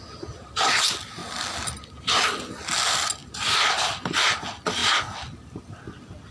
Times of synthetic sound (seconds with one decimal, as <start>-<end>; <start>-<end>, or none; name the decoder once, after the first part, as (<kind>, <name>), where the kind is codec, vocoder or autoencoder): none

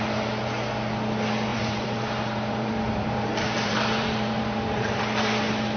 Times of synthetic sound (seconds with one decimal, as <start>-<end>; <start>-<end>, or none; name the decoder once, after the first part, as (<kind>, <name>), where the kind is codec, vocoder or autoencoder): 1.5-5.0 (vocoder, BigVGAN v2)

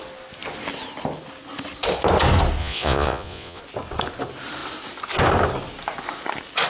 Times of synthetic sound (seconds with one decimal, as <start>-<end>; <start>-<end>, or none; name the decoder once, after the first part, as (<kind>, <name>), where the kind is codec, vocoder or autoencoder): 2.6-3.6 (vocoder, Vocos)

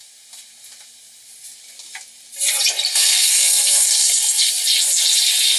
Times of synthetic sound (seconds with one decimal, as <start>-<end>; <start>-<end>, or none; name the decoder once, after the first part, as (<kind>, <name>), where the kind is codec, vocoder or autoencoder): 2.9-4.5 (codec, SNAC)